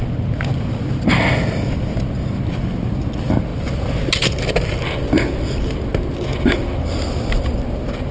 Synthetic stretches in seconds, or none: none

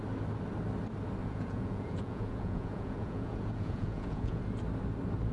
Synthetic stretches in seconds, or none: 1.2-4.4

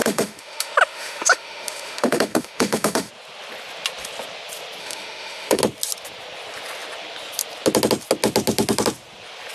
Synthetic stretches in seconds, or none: 0.0-3.1; 4.8-5.6